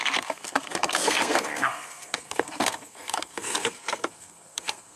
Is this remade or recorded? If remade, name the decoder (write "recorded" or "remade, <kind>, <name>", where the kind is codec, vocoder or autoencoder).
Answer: remade, codec, SNAC